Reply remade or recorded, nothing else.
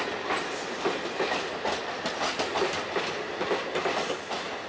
recorded